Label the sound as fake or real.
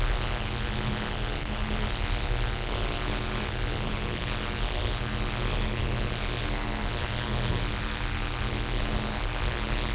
fake